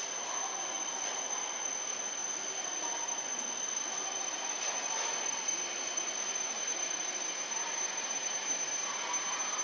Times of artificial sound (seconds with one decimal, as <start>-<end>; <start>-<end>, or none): none